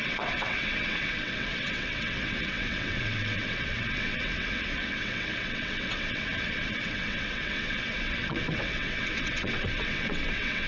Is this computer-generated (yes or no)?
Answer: yes